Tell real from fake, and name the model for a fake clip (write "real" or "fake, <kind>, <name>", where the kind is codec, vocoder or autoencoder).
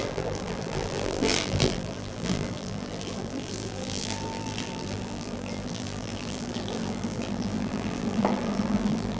fake, vocoder, BigVGAN v2